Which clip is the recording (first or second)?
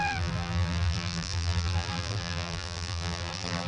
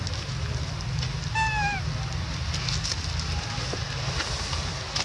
second